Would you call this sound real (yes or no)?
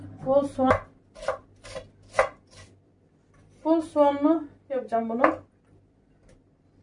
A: yes